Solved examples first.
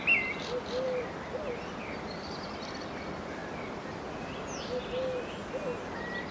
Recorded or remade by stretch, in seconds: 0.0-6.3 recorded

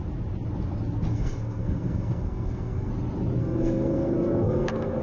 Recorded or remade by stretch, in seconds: 0.0-1.1 recorded; 1.1-2.9 remade; 2.9-3.4 recorded; 3.4-5.0 remade

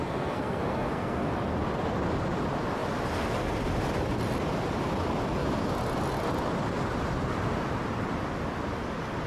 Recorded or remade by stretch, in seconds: 0.0-1.3 remade; 1.3-9.3 recorded

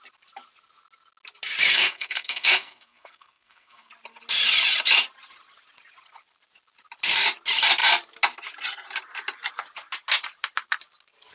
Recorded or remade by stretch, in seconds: 0.0-1.7 recorded; 1.7-3.9 remade; 3.9-11.3 recorded